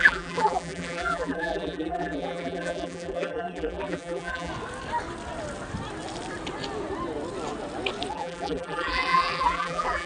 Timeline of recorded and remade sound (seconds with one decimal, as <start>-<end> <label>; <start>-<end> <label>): 0.0-4.5 remade; 4.5-8.1 recorded; 8.1-10.1 remade